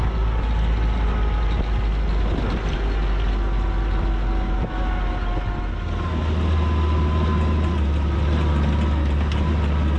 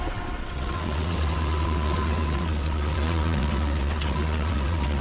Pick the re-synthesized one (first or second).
second